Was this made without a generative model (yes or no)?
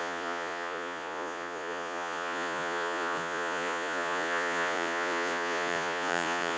no